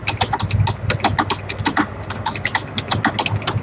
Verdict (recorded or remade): recorded